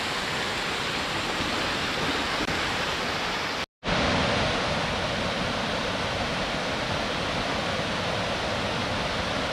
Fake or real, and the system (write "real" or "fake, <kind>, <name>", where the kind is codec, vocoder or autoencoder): real